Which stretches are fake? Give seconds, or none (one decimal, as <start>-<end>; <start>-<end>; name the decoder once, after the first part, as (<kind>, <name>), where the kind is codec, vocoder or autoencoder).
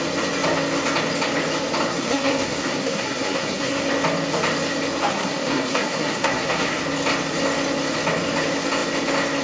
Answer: 1.9-3.8 (codec, SNAC); 5.1-6.8